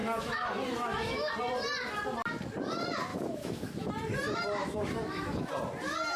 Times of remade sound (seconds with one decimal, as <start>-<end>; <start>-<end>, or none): 0.0-1.3; 3.1-3.9; 4.6-5.5